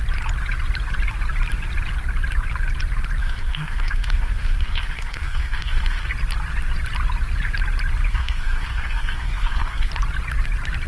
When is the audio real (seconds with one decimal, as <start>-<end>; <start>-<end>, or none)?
0.0-3.2; 6.1-8.1; 9.9-10.9

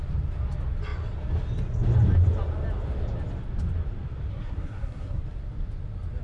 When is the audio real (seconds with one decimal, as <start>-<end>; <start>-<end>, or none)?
0.0-4.3; 5.2-6.2

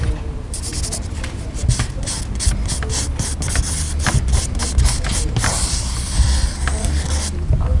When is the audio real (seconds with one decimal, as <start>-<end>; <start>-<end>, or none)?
0.0-7.8